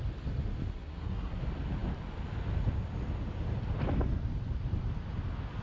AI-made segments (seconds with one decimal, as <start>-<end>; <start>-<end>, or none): 0.7-1.4